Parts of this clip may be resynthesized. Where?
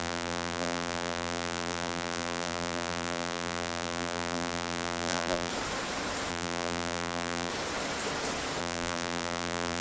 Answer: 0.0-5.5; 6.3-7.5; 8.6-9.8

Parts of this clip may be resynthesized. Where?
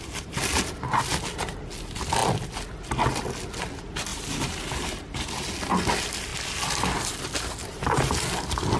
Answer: 4.1-5.3; 7.6-8.1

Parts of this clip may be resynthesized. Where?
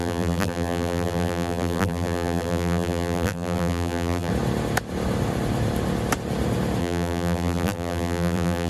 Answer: 0.0-4.3; 6.8-8.7